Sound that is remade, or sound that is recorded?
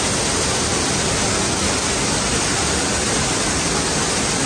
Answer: recorded